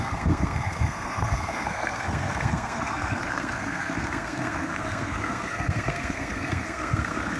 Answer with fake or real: fake